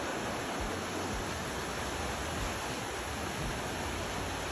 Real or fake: real